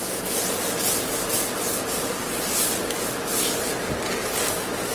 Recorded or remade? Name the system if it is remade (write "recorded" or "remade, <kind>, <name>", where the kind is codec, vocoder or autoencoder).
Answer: recorded